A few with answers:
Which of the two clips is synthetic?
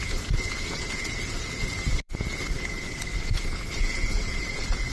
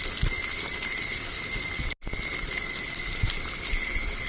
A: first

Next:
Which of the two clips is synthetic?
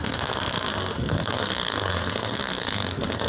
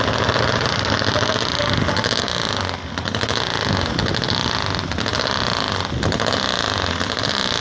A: first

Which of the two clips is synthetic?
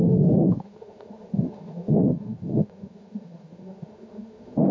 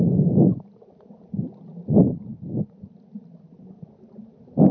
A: first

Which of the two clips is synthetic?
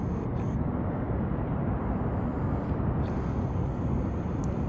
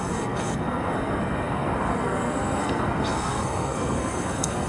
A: second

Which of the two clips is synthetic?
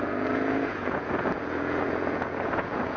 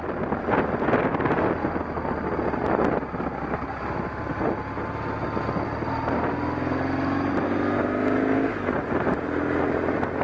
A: first